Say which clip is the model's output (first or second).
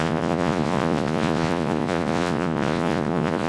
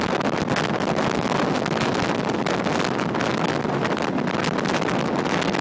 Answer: first